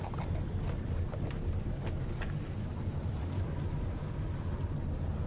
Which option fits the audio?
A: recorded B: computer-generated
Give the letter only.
A